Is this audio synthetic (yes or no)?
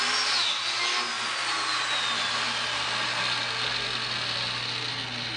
no